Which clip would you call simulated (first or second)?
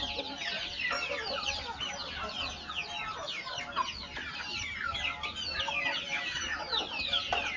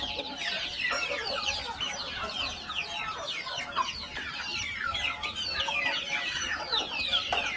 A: second